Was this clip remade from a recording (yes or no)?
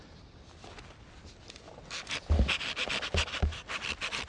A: no